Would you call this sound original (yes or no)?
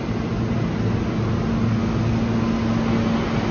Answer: yes